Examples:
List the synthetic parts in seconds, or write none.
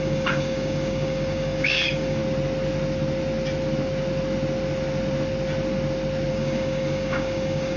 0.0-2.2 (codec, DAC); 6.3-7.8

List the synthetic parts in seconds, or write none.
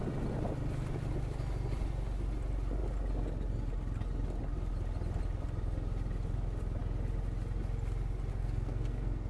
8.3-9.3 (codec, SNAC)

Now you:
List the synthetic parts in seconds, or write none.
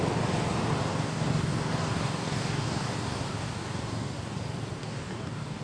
0.9-4.2 (codec, DAC); 4.8-5.6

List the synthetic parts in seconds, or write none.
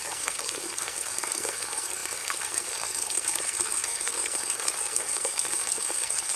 0.0-6.4 (codec, SNAC)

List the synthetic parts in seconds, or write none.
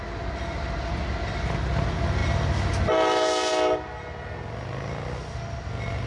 none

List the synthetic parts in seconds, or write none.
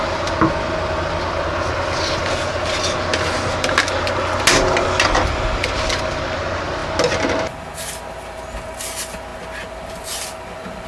none